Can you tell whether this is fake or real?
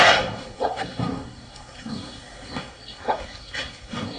fake